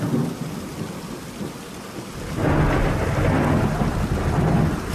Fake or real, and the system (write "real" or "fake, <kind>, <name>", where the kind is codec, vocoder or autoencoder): real